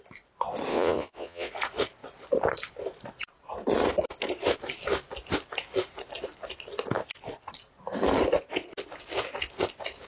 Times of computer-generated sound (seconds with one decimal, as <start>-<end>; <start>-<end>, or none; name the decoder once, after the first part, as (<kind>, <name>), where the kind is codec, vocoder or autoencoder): 0.7-1.5 (vocoder, Vocos)